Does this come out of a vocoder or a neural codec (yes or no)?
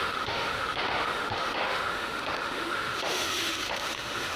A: yes